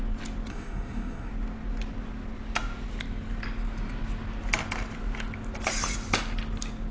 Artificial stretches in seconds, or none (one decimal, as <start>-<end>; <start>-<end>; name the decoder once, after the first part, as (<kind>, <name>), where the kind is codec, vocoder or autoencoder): 0.5-1.3 (codec, SNAC)